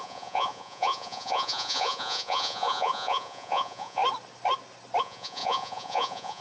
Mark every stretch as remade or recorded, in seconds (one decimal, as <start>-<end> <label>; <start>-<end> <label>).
0.0-4.0 remade; 4.0-5.0 recorded; 5.0-6.4 remade